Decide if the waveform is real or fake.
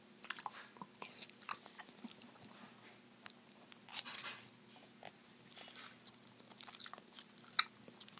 real